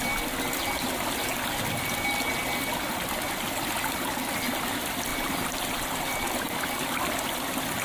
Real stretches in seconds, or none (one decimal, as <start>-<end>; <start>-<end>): 0.0-5.1; 5.8-7.8